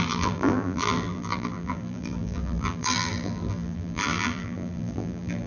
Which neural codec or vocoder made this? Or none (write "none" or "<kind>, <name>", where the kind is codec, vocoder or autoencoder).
vocoder, BigVGAN v2